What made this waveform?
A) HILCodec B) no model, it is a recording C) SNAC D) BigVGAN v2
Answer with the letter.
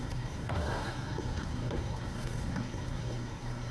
C